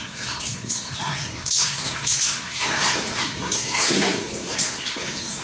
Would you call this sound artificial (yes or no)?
yes